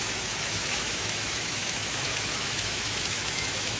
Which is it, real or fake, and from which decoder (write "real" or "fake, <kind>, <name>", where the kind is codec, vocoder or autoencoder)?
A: fake, autoencoder, DAC-VAE